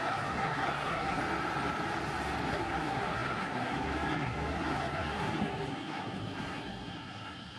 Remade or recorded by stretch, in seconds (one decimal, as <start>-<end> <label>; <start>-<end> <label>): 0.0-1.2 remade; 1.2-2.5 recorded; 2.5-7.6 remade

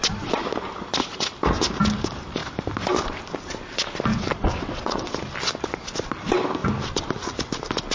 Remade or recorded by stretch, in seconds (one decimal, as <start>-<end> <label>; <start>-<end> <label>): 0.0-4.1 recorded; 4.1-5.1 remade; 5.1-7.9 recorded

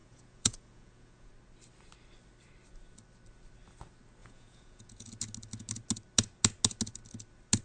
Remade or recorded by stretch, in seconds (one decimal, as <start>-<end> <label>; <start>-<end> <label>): 0.0-1.3 remade; 1.3-4.2 recorded; 4.2-5.1 remade; 5.1-7.6 recorded